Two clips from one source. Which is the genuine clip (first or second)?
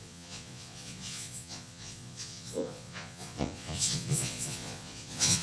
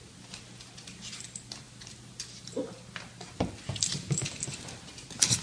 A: second